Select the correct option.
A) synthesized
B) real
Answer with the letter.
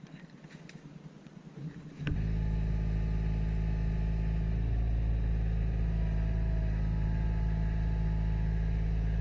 B